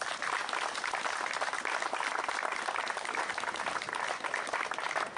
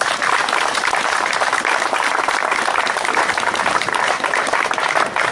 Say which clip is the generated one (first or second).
second